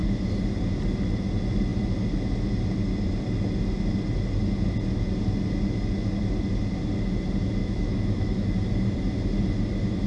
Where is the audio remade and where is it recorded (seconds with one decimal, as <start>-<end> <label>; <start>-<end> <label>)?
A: 0.0-7.6 recorded; 7.6-8.5 remade; 8.5-10.1 recorded